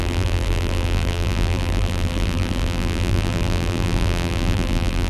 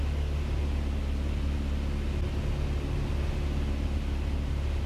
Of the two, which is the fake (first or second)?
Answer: first